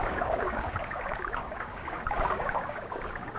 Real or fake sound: fake